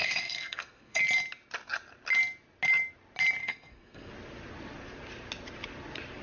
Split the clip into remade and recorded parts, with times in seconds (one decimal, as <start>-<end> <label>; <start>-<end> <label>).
0.0-1.0 remade; 1.0-3.4 recorded; 3.4-4.1 remade; 4.1-6.2 recorded